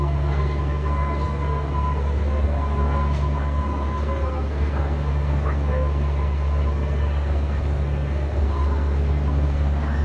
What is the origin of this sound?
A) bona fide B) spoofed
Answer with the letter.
B